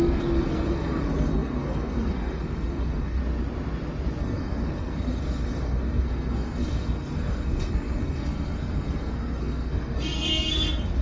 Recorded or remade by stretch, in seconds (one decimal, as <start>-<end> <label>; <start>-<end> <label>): 0.0-3.2 remade; 3.2-4.2 recorded; 4.2-11.0 remade